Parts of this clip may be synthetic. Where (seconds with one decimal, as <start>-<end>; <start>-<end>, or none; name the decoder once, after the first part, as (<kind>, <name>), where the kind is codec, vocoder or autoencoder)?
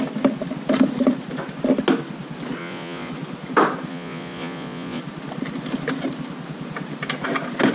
2.6-3.1 (vocoder, Vocos); 3.9-5.0